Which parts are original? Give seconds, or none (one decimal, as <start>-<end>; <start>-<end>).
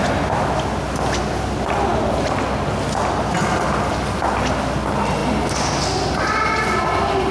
0.0-7.3